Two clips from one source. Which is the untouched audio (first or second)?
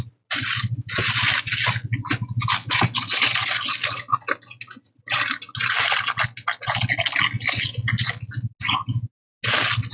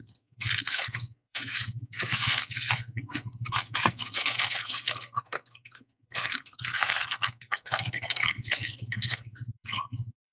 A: first